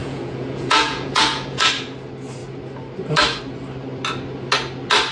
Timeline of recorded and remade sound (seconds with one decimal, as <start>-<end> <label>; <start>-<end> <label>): 0.0-1.7 remade; 1.7-5.1 recorded